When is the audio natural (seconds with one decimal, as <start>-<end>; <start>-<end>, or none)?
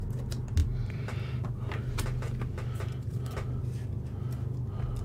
0.0-0.6; 3.6-5.0